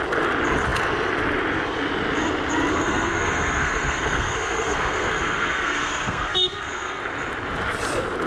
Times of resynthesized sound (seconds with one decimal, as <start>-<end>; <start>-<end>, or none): 2.7-7.0